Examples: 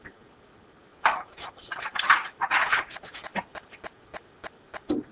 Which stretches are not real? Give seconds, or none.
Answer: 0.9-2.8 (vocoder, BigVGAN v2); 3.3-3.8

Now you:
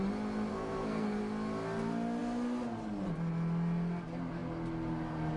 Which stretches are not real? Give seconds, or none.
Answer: 0.5-1.2 (codec, SNAC)

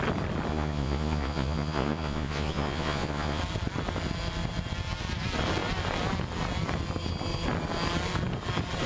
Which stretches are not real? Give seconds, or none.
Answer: 0.5-3.4 (vocoder, Vocos)

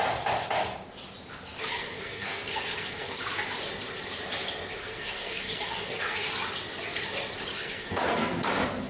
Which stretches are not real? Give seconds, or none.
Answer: 1.7-3.2 (codec, SNAC); 4.8-6.3; 7.5-8.5

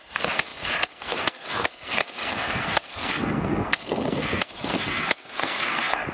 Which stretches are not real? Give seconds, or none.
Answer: 0.0-6.1 (codec, SNAC)

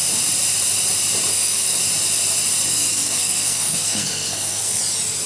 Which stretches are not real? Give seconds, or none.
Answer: 1.3-1.8 (codec, SNAC); 2.7-4.8

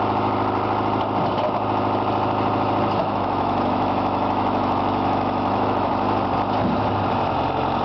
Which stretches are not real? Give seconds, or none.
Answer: 3.0-5.9 (autoencoder, DAC-VAE)